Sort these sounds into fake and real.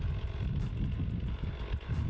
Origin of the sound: real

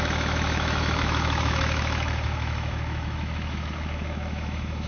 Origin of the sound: fake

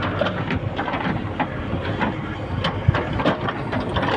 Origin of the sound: fake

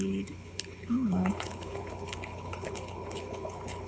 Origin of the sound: fake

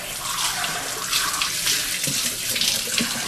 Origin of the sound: real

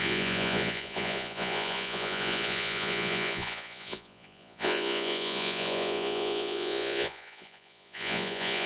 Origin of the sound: fake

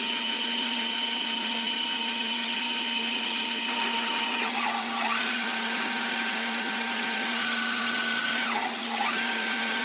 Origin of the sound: fake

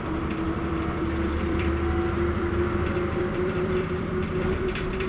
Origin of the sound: fake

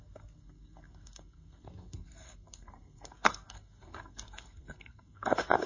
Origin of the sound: fake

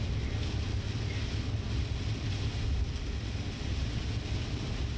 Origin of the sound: real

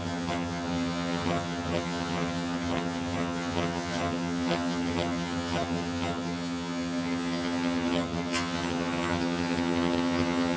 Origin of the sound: fake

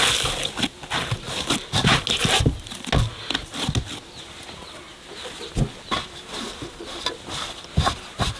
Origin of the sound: real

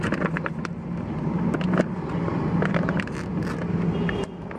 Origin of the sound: real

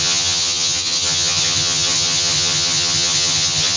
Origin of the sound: fake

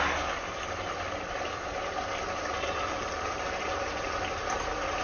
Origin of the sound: real